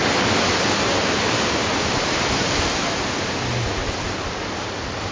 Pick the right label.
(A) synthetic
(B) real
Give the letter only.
B